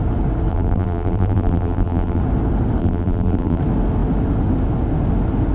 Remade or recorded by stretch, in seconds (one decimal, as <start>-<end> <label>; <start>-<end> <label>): 0.0-0.5 recorded; 0.5-2.2 remade; 2.2-2.8 recorded; 2.8-3.6 remade; 3.6-5.5 recorded